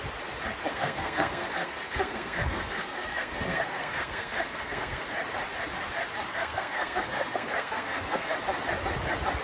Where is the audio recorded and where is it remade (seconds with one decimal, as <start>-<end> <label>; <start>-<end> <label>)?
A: 0.0-0.7 recorded; 0.7-5.0 remade; 5.0-6.3 recorded; 6.3-8.3 remade; 8.3-9.4 recorded